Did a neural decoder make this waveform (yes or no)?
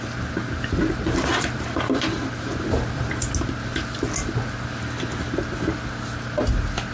no